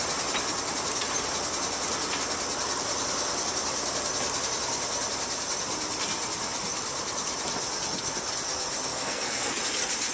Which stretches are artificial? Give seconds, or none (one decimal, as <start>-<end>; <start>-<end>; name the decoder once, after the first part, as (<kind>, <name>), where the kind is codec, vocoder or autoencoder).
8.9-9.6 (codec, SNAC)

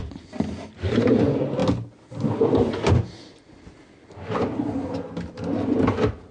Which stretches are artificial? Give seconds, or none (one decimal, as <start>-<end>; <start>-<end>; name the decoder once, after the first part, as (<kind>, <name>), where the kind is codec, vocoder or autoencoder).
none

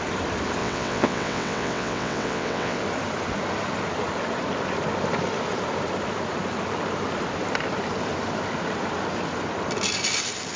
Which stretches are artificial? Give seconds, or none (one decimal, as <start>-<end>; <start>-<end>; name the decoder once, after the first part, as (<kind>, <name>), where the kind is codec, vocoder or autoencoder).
0.6-2.8 (vocoder, WaveNeXt)

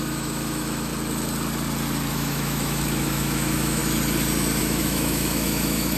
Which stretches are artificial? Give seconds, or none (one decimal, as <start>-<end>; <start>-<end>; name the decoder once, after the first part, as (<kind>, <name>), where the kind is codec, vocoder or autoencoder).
0.0-0.9 (autoencoder, DAC-VAE); 2.1-3.8; 4.6-6.0

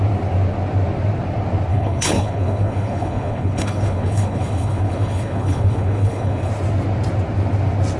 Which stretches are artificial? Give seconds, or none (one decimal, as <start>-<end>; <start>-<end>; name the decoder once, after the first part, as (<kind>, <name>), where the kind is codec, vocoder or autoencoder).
1.7-6.5 (codec, HILCodec)

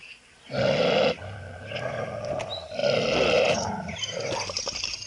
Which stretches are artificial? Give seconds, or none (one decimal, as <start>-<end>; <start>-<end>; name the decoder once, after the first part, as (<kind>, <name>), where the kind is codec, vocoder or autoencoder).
none

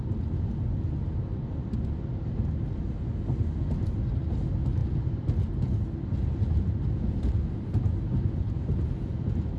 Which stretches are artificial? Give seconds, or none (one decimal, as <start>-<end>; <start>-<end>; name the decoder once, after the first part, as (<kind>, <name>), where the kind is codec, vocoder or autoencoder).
none

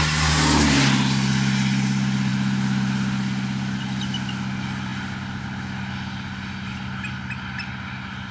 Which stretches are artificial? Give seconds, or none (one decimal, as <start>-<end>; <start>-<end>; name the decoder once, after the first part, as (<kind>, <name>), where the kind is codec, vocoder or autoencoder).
none